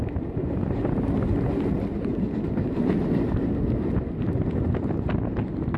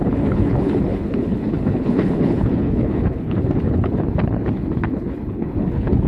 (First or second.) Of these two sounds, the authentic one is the first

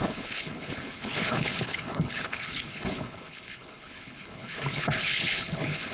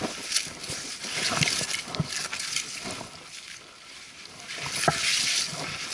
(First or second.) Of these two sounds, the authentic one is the second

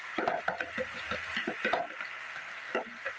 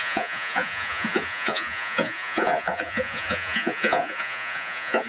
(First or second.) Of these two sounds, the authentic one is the first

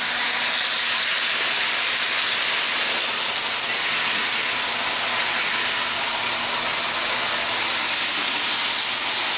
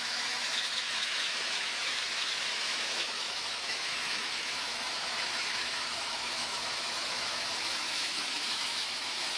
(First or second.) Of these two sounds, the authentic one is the first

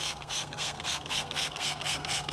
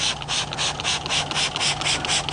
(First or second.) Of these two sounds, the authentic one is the second